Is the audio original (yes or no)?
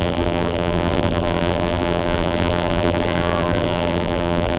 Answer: no